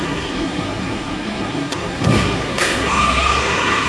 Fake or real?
fake